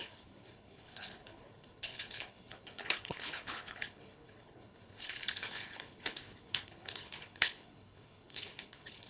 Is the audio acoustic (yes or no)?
no